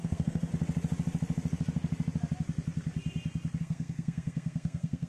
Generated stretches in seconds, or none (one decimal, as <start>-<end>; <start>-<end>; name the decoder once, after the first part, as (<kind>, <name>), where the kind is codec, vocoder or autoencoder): 0.0-0.5 (codec, SNAC); 3.6-5.1